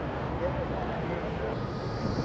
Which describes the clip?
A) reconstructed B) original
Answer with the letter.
B